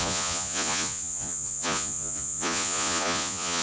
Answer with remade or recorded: remade